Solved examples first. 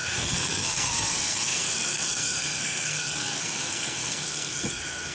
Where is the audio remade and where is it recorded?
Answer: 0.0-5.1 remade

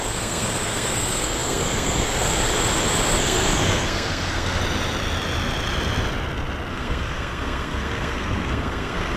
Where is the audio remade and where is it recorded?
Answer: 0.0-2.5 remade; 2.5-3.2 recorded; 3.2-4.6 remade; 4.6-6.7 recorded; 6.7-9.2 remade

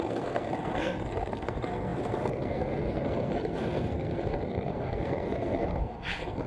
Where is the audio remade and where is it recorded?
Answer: 0.0-6.5 remade

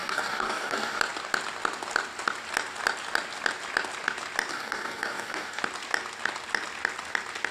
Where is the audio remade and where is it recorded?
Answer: 0.0-1.0 remade; 1.0-4.5 recorded; 4.5-5.6 remade; 5.6-7.5 recorded

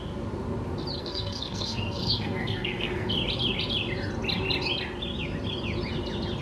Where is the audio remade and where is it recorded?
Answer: 0.0-1.0 recorded; 1.0-3.1 remade; 3.1-6.4 recorded

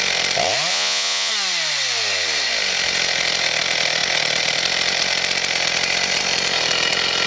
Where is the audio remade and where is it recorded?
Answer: 0.0-0.7 recorded; 0.7-1.3 remade; 1.3-7.3 recorded